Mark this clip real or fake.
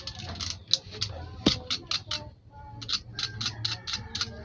real